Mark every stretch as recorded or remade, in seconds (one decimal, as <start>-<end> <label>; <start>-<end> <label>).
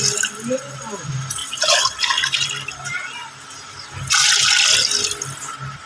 0.0-1.4 recorded; 1.4-2.0 remade; 2.0-5.9 recorded